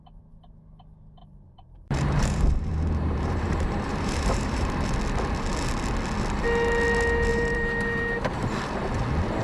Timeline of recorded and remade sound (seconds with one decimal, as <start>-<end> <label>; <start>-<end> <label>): 0.0-1.2 recorded; 1.2-4.7 remade; 4.7-7.3 recorded; 7.3-8.6 remade; 8.6-9.4 recorded